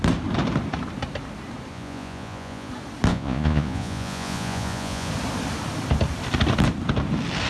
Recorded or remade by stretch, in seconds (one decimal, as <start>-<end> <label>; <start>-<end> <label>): 0.0-1.7 recorded; 1.7-2.7 remade; 2.7-3.1 recorded; 3.1-5.1 remade; 5.1-7.5 recorded